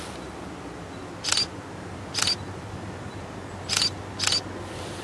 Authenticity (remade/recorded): recorded